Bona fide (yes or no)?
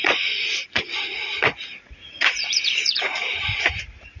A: no